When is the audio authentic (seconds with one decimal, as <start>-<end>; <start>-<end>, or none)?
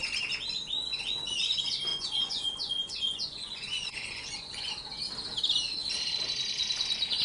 0.0-0.8; 1.3-1.9; 4.7-7.2